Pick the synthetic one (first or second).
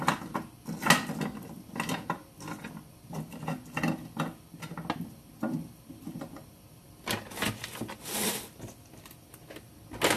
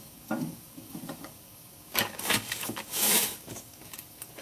second